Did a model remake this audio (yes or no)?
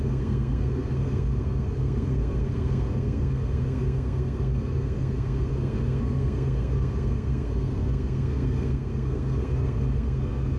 yes